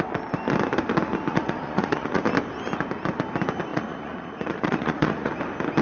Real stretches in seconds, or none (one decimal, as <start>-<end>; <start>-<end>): 0.0-1.3; 2.2-3.7; 5.3-5.8